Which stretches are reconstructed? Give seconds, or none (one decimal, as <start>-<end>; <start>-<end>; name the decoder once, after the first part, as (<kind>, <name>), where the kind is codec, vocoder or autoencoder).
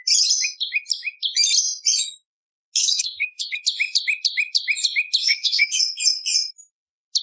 2.8-3.6 (codec, SNAC); 5.2-5.8